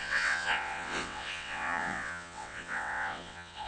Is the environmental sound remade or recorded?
remade